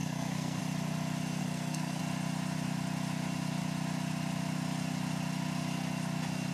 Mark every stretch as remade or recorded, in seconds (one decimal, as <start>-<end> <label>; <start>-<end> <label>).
0.0-0.6 remade; 0.6-1.4 recorded; 1.4-2.0 remade; 2.0-6.5 recorded